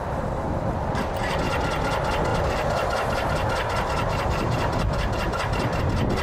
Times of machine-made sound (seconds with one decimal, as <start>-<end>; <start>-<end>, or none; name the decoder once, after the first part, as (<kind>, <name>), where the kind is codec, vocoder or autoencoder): none